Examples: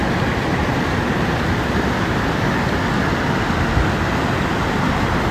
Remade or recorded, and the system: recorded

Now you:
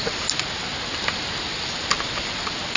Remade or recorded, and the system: recorded